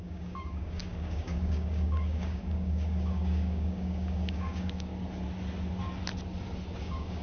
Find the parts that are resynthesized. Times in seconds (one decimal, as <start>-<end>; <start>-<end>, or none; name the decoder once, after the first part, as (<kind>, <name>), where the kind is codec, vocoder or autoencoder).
0.0-4.9 (codec, DAC); 6.8-7.2